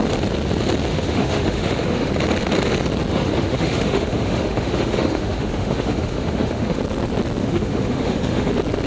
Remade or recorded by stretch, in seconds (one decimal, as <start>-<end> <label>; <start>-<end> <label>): 0.0-0.9 recorded; 0.9-2.1 remade; 2.1-3.1 recorded; 3.1-6.8 remade; 6.8-7.4 recorded; 7.4-8.5 remade; 8.5-8.9 recorded